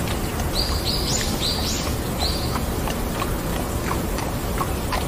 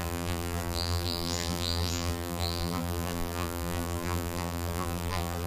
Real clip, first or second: first